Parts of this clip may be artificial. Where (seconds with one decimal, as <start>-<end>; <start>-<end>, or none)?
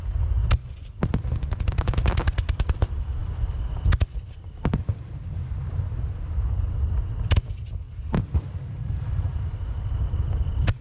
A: none